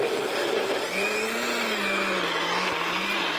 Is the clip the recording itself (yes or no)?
yes